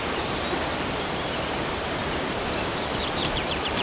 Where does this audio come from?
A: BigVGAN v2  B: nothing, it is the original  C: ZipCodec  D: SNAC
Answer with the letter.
A